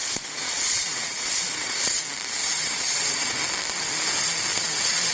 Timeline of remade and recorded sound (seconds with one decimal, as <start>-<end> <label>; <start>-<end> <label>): 0.0-2.0 remade; 2.0-2.4 recorded; 2.4-3.4 remade; 3.4-5.1 recorded